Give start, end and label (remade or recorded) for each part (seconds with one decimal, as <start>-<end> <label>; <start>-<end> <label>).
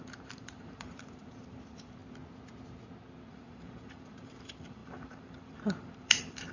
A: 0.0-2.0 remade; 2.0-3.3 recorded; 3.3-6.5 remade